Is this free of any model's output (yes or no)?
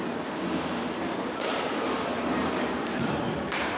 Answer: yes